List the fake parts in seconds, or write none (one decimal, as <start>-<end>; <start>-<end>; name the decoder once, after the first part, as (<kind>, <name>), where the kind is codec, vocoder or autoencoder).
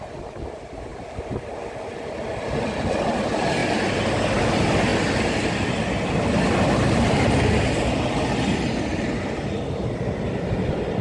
0.0-0.9 (vocoder, BigVGAN v2); 1.7-3.6; 4.5-4.9; 6.1-8.9; 9.6-11.0